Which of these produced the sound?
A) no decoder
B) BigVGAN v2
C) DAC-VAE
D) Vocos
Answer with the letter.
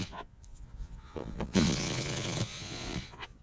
D